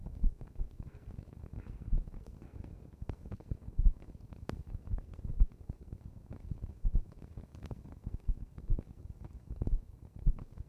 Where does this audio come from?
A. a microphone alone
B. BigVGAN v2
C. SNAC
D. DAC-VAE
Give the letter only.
C